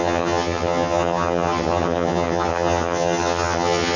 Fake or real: fake